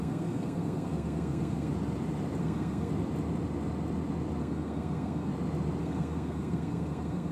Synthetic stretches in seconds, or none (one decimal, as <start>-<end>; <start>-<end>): 0.0-1.7; 2.4-2.9; 4.4-5.3; 5.8-7.3